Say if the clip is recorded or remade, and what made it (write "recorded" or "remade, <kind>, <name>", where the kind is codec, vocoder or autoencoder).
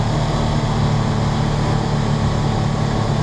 recorded